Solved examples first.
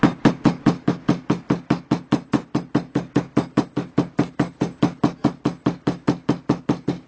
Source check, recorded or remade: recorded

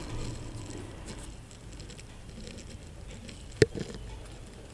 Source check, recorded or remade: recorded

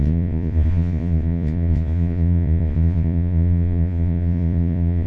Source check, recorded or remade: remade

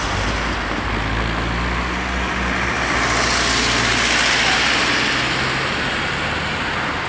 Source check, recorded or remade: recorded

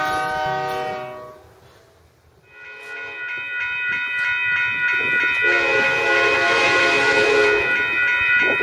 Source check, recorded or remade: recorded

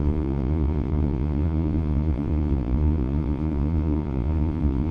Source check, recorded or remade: remade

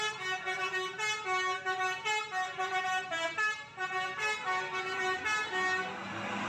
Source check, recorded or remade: recorded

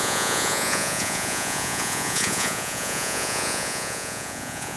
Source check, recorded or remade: remade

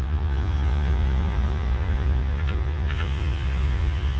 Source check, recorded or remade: remade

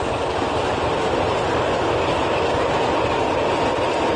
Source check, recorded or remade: recorded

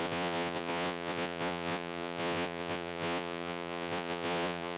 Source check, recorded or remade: remade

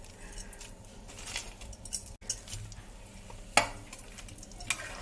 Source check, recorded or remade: recorded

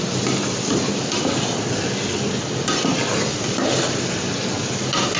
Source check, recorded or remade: recorded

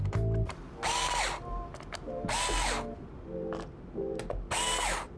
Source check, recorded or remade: recorded